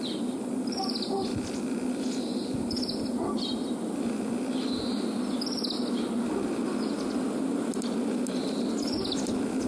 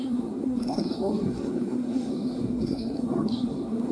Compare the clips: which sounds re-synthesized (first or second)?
second